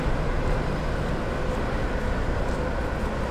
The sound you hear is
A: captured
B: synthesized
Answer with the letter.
A